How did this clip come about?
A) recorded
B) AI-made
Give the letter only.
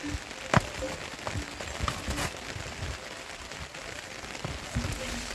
A